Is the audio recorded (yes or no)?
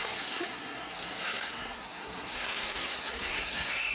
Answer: no